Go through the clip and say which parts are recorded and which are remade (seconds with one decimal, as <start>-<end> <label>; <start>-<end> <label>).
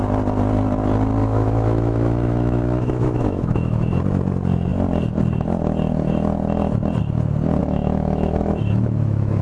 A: 0.0-1.2 recorded; 1.2-4.0 remade; 4.0-7.6 recorded; 7.6-9.4 remade